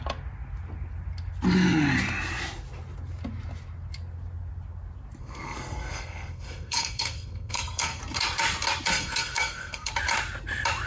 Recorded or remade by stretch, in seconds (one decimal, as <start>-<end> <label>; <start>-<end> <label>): 0.0-5.2 recorded; 5.2-8.0 remade; 8.0-8.9 recorded; 8.9-9.9 remade; 9.9-10.9 recorded